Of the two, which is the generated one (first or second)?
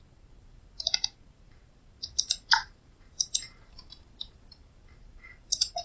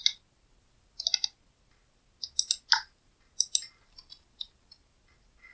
first